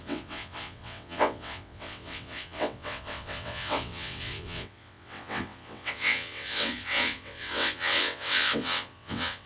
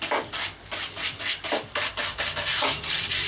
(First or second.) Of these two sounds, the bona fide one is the second